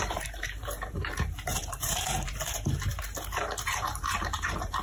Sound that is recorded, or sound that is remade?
remade